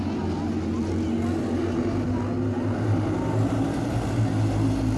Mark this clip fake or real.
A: real